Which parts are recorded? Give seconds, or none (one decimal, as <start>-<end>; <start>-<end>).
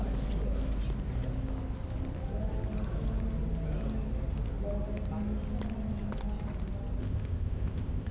0.0-7.0